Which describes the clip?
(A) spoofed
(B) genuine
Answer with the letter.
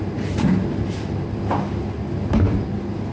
B